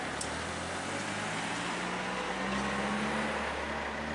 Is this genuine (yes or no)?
yes